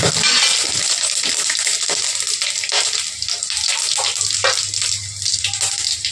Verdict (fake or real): real